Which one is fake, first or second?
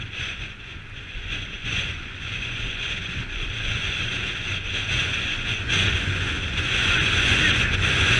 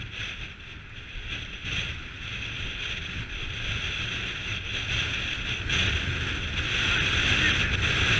first